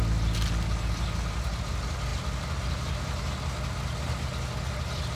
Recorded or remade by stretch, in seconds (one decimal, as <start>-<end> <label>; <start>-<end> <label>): 0.0-5.2 recorded